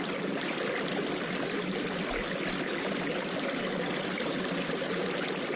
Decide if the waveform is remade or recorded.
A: recorded